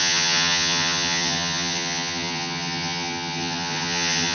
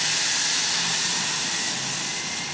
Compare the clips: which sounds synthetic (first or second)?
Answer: first